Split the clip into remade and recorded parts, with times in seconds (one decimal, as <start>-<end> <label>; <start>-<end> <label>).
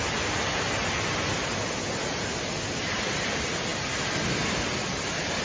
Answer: 0.0-0.8 recorded; 0.8-1.4 remade; 1.4-5.4 recorded